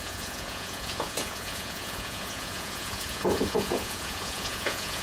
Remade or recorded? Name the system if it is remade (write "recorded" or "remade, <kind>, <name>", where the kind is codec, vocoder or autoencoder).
remade, vocoder, Vocos